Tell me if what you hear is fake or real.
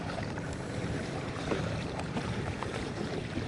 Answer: fake